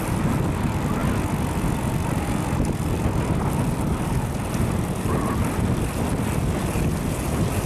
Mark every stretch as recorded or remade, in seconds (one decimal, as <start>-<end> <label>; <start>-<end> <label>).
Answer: 0.0-7.7 recorded